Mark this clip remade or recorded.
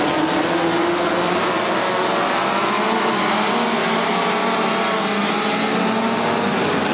recorded